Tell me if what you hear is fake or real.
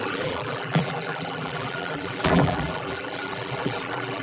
fake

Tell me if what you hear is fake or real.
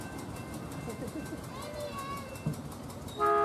real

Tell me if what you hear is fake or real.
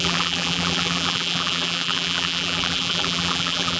fake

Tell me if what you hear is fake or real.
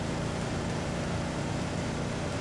real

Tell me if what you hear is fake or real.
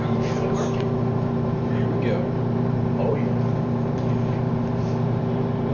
fake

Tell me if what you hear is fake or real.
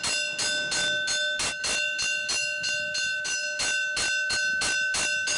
real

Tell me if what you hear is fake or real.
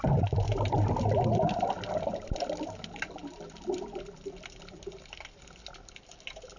fake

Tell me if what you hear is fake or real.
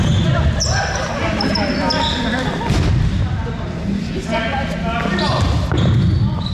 real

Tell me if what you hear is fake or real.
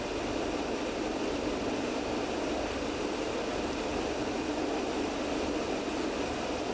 real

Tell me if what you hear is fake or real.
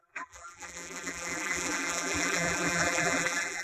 fake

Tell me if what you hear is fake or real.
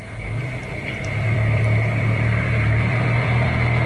fake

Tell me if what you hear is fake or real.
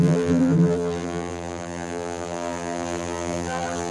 fake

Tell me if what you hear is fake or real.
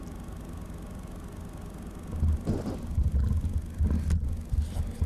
real